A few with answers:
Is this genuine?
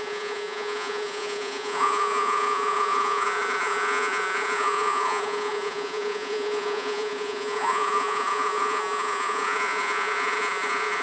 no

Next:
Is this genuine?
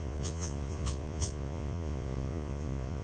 no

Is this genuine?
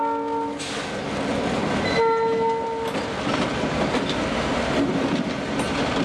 yes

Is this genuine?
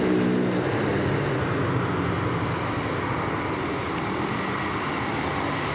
yes